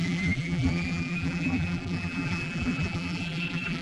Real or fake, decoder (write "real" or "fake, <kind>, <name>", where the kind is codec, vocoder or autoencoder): fake, vocoder, BigVGAN v2